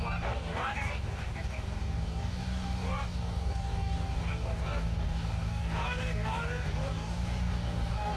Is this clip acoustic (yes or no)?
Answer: no